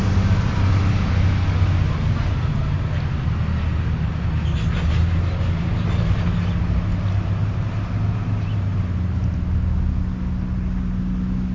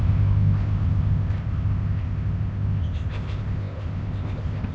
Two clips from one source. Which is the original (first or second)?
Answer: first